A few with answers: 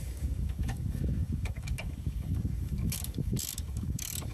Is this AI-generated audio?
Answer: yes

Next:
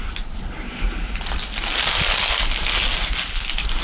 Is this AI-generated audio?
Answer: no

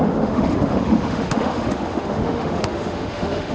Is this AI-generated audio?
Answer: yes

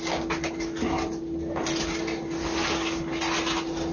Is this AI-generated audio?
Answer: no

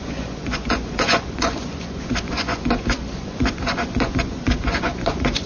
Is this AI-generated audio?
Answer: yes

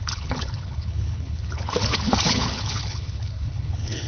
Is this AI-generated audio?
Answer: yes